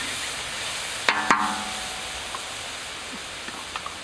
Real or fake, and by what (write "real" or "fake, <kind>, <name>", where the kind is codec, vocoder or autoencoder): real